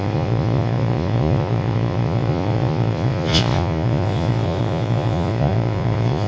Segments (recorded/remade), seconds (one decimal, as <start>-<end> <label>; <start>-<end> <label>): 0.0-6.3 remade